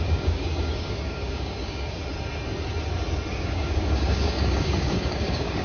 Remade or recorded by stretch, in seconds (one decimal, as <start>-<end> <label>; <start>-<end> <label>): 0.0-2.0 remade; 2.0-3.3 recorded; 3.3-5.6 remade